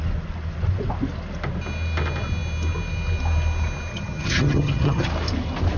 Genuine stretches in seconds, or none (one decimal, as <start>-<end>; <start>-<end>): 0.0-3.9; 5.1-5.8

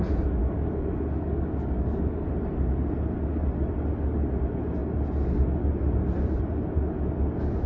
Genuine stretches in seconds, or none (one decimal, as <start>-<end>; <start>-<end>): 0.0-0.4; 2.3-7.7

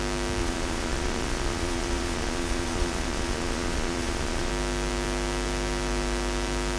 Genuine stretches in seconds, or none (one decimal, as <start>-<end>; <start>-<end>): 0.0-0.4; 4.5-6.8

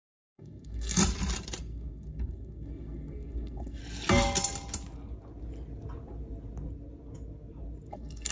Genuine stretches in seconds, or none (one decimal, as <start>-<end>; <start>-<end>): 1.0-1.6; 3.8-7.9

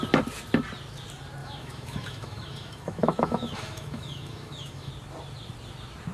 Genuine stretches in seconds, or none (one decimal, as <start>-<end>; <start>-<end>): 0.0-1.4; 4.9-6.1

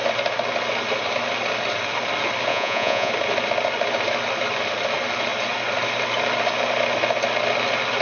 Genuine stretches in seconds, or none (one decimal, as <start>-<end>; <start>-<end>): 0.0-2.5; 3.1-8.0